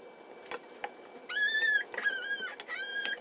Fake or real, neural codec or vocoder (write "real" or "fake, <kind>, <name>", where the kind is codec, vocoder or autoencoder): real